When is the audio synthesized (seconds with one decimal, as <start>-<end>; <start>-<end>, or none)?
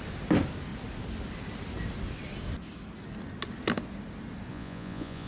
4.5-5.3